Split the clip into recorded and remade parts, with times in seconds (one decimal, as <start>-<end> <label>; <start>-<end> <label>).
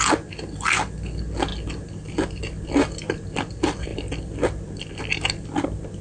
0.0-6.0 recorded